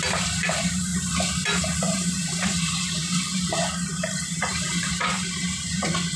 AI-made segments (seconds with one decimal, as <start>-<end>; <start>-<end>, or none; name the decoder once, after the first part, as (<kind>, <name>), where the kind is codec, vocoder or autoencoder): 0.0-0.9 (vocoder, BigVGAN v2); 1.6-3.0; 4.0-6.2